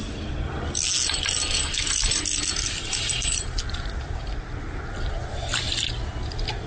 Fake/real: real